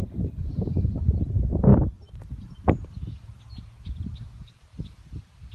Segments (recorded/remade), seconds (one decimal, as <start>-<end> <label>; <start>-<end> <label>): 0.0-0.7 recorded; 0.7-1.2 remade; 1.2-5.5 recorded